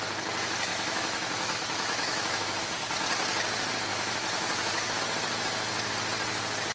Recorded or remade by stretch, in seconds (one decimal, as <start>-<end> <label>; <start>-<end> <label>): 0.0-0.7 recorded; 0.7-2.6 remade; 2.6-3.9 recorded; 3.9-5.0 remade; 5.0-6.7 recorded